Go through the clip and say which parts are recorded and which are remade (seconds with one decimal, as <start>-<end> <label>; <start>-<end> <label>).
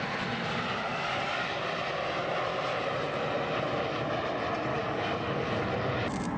0.0-0.9 recorded; 0.9-1.6 remade; 1.6-4.7 recorded; 4.7-5.7 remade; 5.7-6.4 recorded